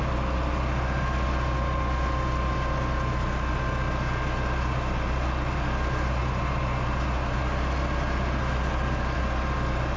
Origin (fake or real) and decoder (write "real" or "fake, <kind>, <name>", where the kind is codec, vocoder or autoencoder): real